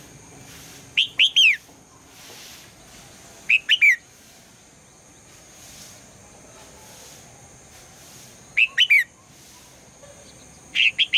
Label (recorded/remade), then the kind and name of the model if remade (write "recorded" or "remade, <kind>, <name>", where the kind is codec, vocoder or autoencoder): recorded